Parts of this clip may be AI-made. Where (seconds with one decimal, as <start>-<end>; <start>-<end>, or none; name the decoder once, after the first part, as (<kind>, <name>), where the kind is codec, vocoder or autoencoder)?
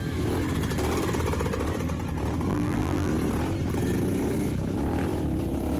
2.5-3.1 (vocoder, BigVGAN v2)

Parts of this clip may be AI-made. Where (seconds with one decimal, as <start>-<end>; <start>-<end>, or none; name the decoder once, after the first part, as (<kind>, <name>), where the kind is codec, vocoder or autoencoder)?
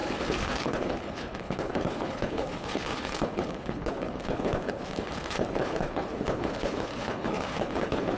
0.0-8.2 (codec, HILCodec)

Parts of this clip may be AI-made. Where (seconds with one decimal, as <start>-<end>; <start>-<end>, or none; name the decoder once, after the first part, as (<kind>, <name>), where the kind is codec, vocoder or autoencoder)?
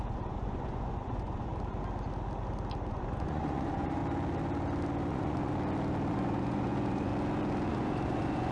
0.0-1.5 (vocoder, Vocos); 2.9-4.0; 5.1-5.5; 6.1-7.1; 7.7-8.5